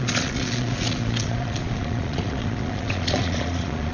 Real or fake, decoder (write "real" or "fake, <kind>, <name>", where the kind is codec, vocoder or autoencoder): fake, vocoder, Vocos